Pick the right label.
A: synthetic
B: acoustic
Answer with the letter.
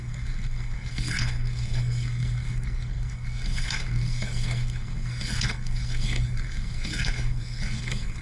A